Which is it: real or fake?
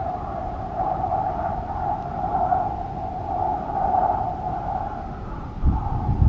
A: fake